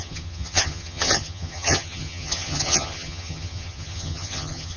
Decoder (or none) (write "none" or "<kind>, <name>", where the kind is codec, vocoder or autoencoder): vocoder, HiFi-GAN